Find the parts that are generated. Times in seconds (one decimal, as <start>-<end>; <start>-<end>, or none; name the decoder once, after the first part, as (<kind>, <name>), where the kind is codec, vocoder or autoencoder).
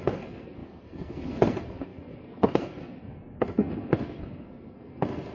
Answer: 0.0-5.3 (codec, SNAC)